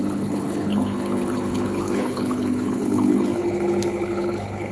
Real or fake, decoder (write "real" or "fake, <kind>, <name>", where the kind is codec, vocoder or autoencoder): fake, codec, HILCodec